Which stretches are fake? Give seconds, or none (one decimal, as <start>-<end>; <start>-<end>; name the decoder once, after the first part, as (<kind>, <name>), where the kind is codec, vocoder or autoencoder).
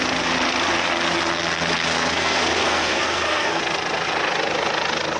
1.9-3.6 (codec, SNAC)